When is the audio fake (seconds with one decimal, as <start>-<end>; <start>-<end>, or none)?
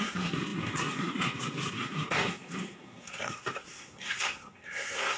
0.0-5.2